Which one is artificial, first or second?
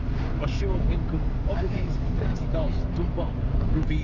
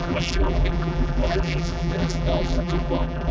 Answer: second